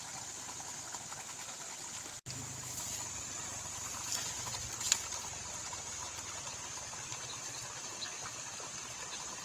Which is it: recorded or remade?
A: recorded